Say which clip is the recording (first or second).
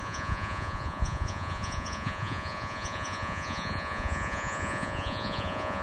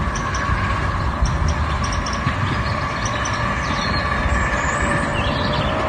second